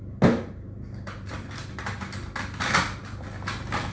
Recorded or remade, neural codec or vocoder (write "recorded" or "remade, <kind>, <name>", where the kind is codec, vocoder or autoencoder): recorded